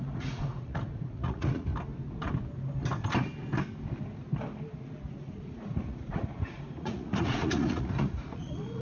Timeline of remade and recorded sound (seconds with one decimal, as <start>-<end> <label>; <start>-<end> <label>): 0.0-1.7 remade; 1.7-5.1 recorded; 5.1-8.8 remade